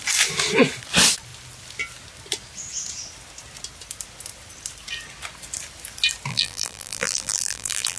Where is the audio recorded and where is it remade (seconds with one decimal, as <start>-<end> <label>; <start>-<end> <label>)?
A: 0.0-6.3 recorded; 6.3-8.0 remade